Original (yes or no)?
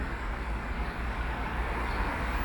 no